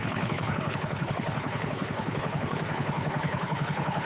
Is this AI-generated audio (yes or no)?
yes